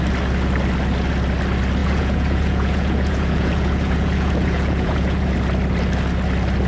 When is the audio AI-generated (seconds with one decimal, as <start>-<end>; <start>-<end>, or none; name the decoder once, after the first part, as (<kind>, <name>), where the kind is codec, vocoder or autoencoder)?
1.8-5.3 (vocoder, Vocos)